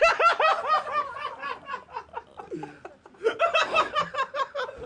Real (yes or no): yes